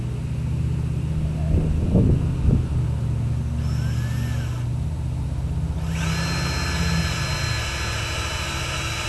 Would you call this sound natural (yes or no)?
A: yes